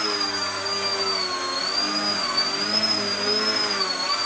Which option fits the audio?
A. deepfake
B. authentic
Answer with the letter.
B